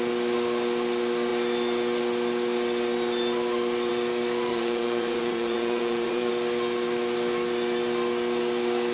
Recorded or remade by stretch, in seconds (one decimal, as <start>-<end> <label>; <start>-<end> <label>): 0.0-4.5 recorded; 4.5-6.3 remade; 6.3-8.9 recorded